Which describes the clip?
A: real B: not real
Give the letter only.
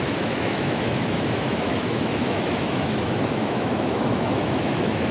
B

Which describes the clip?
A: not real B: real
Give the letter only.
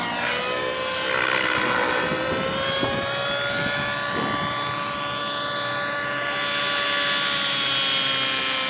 B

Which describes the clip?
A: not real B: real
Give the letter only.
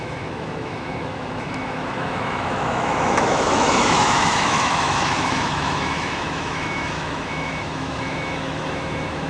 A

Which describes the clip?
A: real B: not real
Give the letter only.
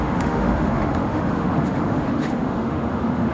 B